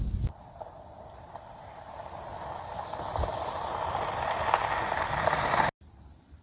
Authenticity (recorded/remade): recorded